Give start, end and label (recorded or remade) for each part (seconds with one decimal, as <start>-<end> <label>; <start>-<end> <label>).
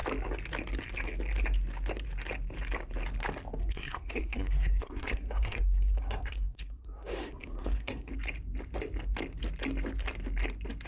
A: 0.0-3.6 recorded; 3.6-8.1 remade; 8.1-10.9 recorded